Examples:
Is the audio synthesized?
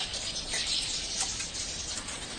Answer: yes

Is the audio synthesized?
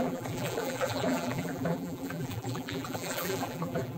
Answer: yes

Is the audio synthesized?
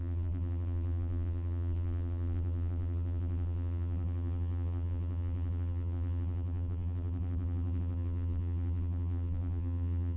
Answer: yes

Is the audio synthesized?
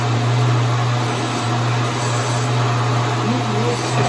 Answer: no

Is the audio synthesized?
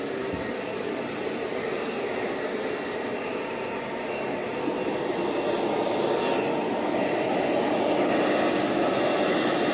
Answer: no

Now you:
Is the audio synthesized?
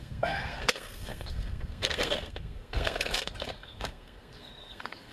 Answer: yes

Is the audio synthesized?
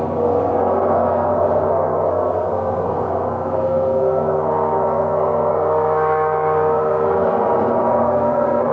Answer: yes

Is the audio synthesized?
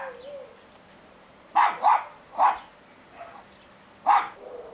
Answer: no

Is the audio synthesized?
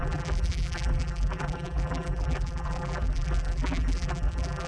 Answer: yes